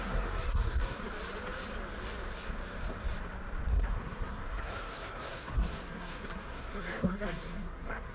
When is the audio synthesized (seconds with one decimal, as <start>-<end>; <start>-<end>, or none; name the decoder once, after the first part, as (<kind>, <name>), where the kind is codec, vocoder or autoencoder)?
0.0-1.0 (codec, SNAC); 3.7-8.1